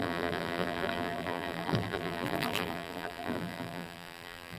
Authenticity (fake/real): fake